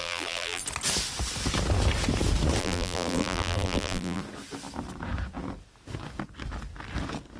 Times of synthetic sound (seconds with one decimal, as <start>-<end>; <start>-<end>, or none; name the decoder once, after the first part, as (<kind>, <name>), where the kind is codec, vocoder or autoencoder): 0.0-0.6 (vocoder, BigVGAN v2); 2.6-4.2